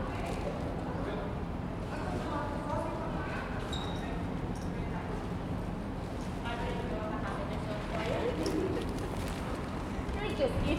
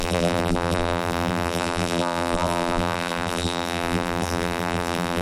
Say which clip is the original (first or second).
first